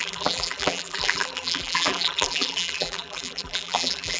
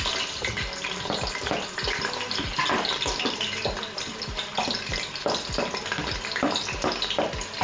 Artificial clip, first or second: first